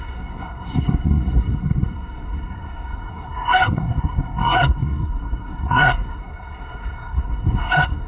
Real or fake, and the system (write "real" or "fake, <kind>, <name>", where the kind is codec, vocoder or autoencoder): fake, codec, SNAC